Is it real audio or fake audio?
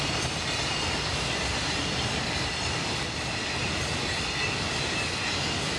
real